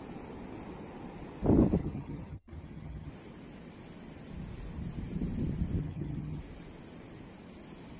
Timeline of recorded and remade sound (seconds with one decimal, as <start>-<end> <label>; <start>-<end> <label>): 0.0-1.8 recorded; 1.8-3.1 remade; 3.1-5.8 recorded; 5.8-6.4 remade; 6.4-8.0 recorded